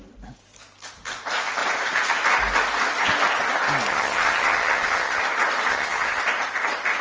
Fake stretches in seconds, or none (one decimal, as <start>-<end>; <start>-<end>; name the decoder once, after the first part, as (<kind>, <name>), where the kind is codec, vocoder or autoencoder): 3.9-5.2 (vocoder, HiFi-GAN); 5.7-6.2